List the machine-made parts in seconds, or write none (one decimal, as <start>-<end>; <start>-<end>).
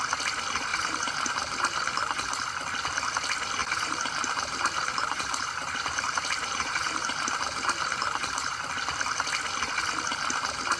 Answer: 0.7-1.3; 3.6-8.6